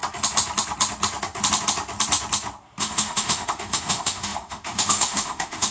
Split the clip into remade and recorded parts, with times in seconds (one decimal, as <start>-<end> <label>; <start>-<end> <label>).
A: 0.0-2.8 recorded; 2.8-5.7 remade